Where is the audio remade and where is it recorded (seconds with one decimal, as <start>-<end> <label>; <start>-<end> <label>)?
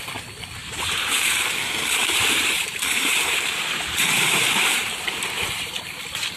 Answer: 0.0-0.6 recorded; 0.6-1.5 remade; 1.5-2.0 recorded; 2.0-5.7 remade; 5.7-6.4 recorded